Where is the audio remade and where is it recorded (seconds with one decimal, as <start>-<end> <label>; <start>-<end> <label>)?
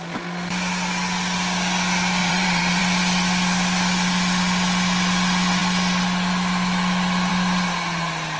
0.0-2.2 recorded; 2.2-2.8 remade; 2.8-8.4 recorded